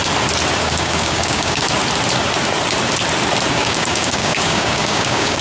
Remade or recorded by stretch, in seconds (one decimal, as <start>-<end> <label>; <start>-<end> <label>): 0.0-0.6 recorded; 0.6-1.8 remade; 1.8-3.5 recorded; 3.5-5.4 remade